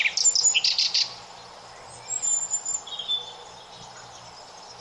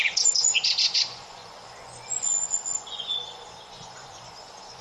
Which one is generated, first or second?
second